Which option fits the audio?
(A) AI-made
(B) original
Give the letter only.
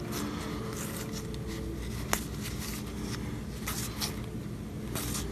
B